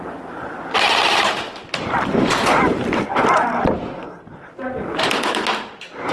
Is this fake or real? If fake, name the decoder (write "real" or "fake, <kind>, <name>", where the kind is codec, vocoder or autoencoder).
real